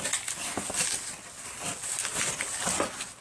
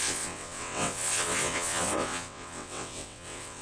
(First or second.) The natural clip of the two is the first